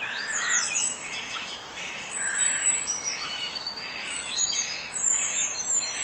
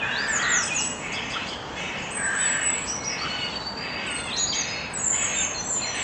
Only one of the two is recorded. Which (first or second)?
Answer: second